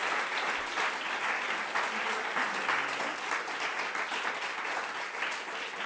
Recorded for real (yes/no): yes